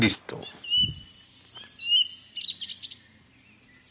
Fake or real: real